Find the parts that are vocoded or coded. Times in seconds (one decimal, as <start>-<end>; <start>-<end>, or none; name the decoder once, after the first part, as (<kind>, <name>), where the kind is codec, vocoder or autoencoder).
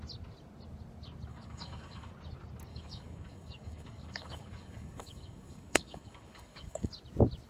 1.3-2.1 (codec, DAC); 2.7-6.9